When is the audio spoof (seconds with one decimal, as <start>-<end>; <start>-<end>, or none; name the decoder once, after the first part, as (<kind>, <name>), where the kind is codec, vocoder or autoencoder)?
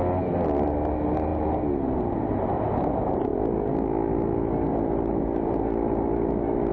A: none